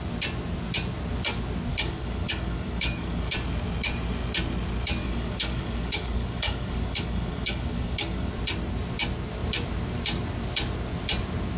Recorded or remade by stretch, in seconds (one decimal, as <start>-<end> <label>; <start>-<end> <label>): 0.0-1.7 recorded; 1.7-3.3 remade; 3.3-5.0 recorded; 5.0-8.3 remade; 8.3-11.6 recorded